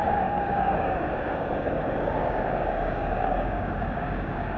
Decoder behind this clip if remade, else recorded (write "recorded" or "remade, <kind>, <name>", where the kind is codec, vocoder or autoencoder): remade, codec, DAC